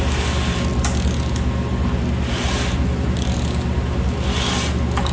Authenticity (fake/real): real